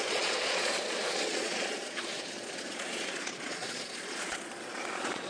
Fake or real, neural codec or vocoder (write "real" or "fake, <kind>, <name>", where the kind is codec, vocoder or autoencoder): fake, vocoder, Vocos